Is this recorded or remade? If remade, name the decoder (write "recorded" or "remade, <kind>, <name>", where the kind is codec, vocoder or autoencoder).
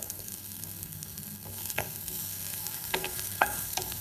remade, codec, SNAC